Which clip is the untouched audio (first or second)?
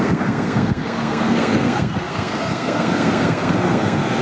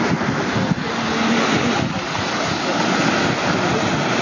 second